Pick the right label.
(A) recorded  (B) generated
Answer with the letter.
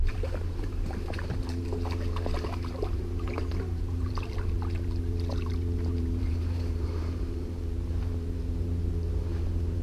B